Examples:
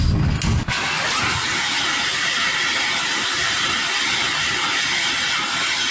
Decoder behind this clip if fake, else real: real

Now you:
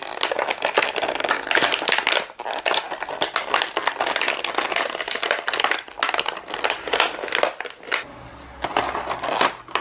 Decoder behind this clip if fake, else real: real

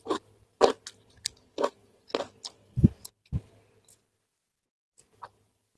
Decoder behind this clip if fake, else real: real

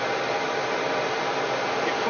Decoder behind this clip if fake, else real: real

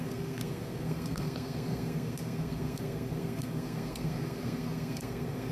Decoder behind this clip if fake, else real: fake, codec, SNAC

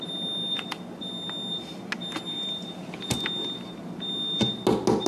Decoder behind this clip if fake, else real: real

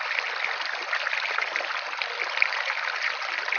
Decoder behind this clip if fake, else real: real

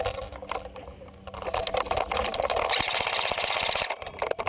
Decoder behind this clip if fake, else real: real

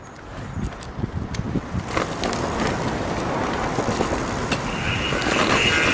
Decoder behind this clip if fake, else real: real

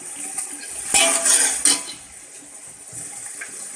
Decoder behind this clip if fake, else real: real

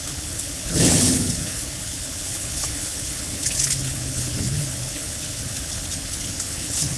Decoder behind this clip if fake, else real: fake, codec, HILCodec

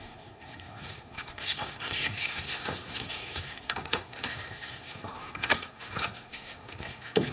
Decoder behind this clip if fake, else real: fake, codec, SNAC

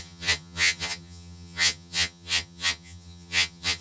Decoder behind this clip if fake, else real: fake, vocoder, HiFi-GAN